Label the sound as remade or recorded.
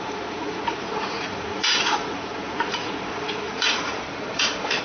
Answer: remade